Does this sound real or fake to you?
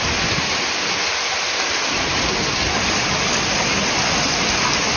real